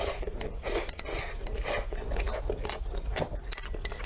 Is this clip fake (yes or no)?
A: no